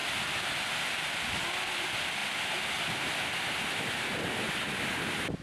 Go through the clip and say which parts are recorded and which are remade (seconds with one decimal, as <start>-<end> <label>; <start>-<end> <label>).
0.0-5.4 recorded